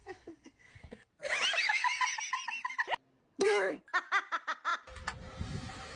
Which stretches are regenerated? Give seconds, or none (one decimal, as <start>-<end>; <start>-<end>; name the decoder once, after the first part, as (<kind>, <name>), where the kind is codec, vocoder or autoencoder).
0.0-1.1 (codec, SNAC); 3.2-3.8